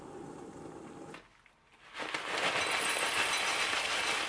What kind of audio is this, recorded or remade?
recorded